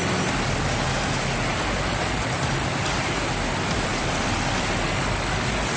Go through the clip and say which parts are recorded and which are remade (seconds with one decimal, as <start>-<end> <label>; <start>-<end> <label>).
0.0-5.8 recorded

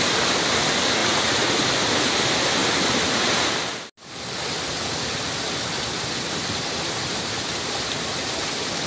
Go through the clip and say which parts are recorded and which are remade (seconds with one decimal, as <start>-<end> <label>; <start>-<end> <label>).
0.0-1.0 recorded; 1.0-1.6 remade; 1.6-8.9 recorded

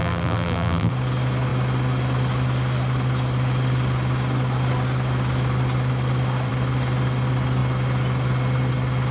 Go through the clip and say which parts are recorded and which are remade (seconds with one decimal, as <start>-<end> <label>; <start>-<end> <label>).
0.0-0.9 remade; 0.9-9.1 recorded